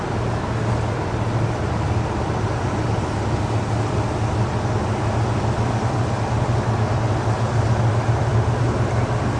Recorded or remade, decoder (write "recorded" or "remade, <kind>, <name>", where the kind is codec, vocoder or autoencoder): recorded